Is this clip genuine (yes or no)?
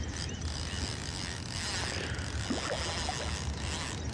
yes